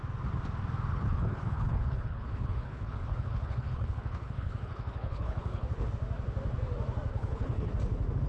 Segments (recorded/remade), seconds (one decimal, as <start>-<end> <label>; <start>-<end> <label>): 0.0-0.9 recorded; 0.9-5.9 remade; 5.9-7.1 recorded; 7.1-7.7 remade; 7.7-8.3 recorded